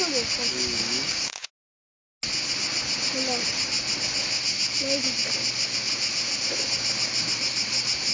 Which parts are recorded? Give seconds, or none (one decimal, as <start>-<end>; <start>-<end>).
0.0-0.5; 1.5-8.1